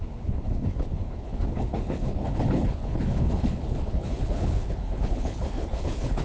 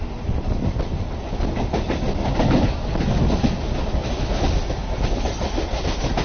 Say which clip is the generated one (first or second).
first